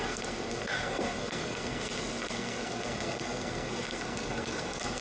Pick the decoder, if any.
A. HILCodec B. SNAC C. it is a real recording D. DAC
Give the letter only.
B